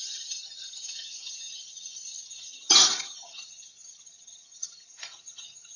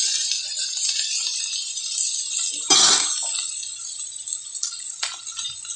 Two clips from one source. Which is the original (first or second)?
second